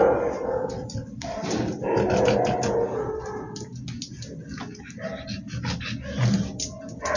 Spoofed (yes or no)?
no